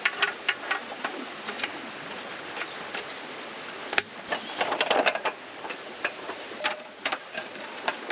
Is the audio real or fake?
real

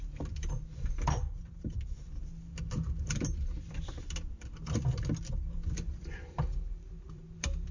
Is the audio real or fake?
fake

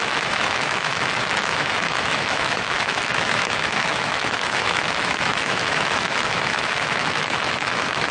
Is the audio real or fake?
fake